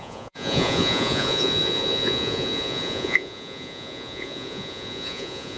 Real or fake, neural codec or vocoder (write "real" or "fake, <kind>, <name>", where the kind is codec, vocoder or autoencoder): fake, vocoder, Vocos